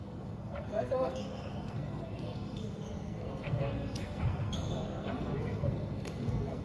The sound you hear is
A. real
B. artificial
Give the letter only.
B